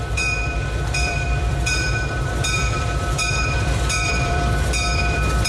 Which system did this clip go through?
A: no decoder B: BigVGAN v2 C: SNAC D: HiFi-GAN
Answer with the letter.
B